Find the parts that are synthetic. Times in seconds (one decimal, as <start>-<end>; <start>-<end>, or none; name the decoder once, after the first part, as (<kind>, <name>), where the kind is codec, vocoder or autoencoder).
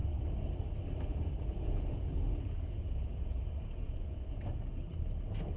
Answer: 1.1-4.4 (vocoder, Vocos)